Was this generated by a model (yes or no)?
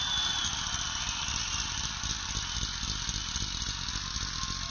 no